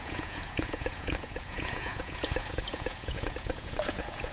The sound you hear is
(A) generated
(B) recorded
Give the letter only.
A